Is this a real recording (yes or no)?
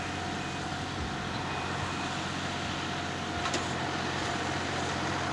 yes